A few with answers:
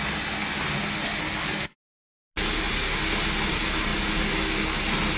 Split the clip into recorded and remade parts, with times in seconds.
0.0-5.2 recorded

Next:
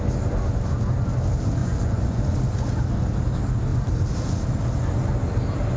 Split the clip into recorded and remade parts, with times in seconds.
0.0-1.6 recorded; 1.6-2.2 remade; 2.2-5.8 recorded

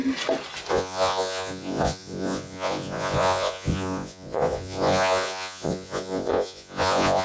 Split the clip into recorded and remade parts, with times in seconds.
0.0-0.7 recorded; 0.7-7.2 remade

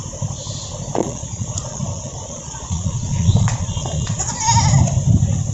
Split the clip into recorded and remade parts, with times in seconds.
0.0-1.0 recorded; 1.0-4.3 remade; 4.3-5.5 recorded

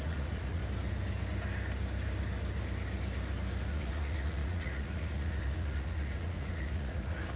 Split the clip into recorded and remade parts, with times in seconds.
0.0-0.6 remade; 0.6-3.7 recorded; 3.7-7.4 remade

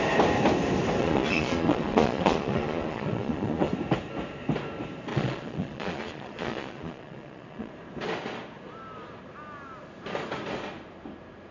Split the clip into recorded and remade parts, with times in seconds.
0.0-1.0 recorded; 1.0-3.7 remade; 3.7-5.1 recorded; 5.1-7.7 remade; 7.7-11.5 recorded

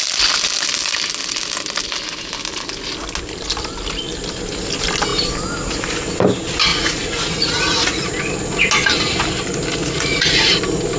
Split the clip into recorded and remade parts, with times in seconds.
0.0-6.7 recorded; 6.7-8.1 remade; 8.1-9.8 recorded; 9.8-10.5 remade; 10.5-11.0 recorded

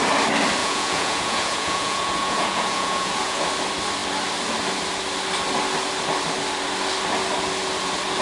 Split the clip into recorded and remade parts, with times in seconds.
0.0-0.6 recorded; 0.6-3.4 remade; 3.4-8.2 recorded